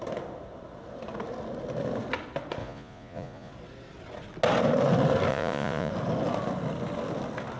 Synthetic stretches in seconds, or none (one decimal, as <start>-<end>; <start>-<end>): 2.6-3.5; 5.3-5.9

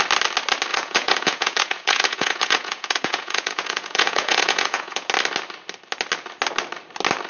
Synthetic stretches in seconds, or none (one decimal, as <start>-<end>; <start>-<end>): 0.7-5.1

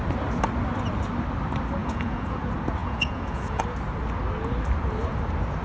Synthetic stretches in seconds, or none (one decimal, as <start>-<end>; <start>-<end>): 1.8-2.4; 2.8-3.6